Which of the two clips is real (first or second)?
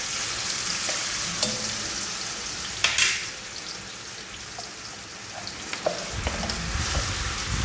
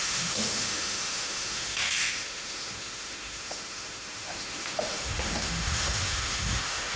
first